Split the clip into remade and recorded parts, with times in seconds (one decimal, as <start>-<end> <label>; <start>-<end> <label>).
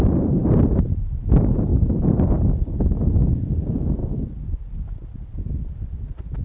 0.0-6.4 recorded